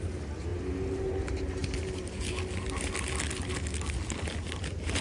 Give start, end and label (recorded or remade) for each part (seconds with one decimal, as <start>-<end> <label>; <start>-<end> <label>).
0.0-5.0 recorded